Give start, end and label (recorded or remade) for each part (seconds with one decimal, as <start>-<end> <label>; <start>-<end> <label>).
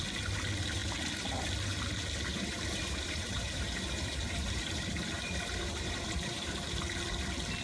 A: 0.0-2.3 recorded; 2.3-6.5 remade; 6.5-7.6 recorded